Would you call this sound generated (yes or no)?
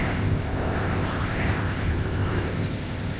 yes